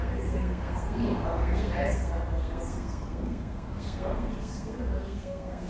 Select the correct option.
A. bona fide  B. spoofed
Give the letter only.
B